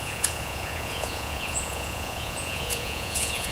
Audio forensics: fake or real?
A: fake